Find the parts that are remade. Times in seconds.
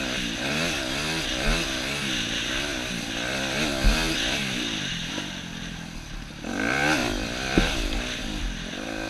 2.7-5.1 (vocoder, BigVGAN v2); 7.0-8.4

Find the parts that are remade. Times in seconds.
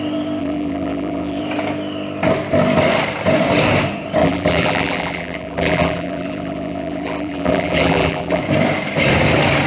0.4-1.4 (vocoder, BigVGAN v2); 4.2-8.4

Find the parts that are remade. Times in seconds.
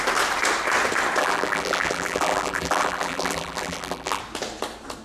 1.2-4.2 (vocoder, BigVGAN v2)